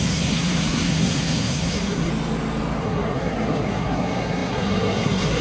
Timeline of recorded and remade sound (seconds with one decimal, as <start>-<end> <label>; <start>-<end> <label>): 0.0-2.1 remade; 2.1-2.8 recorded; 2.8-5.4 remade